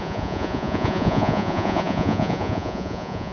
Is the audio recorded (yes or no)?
no